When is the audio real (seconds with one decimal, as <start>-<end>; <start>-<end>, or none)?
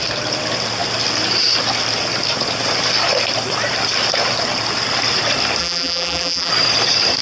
0.0-5.6; 6.5-7.2